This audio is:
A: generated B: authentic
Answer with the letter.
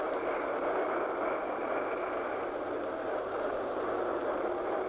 B